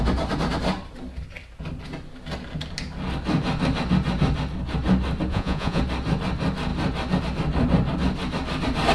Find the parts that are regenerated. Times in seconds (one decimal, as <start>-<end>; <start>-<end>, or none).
5.3-5.8